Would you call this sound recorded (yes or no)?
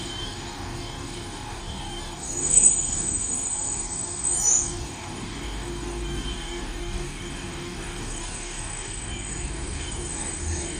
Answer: no